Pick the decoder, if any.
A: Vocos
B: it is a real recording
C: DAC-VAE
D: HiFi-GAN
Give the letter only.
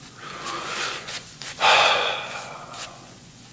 A